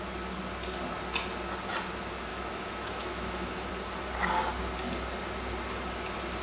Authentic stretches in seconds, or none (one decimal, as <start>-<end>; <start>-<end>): 0.0-2.3; 3.7-6.4